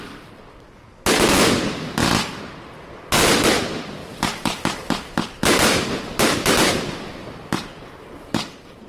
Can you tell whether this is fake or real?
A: real